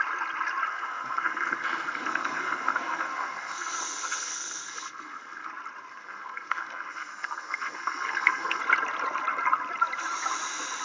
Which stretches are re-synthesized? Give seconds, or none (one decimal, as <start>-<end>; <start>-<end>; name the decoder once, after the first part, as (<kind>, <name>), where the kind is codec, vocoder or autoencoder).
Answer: 0.7-5.5 (codec, SNAC); 5.9-8.6